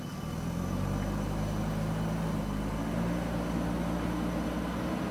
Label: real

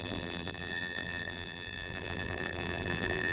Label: fake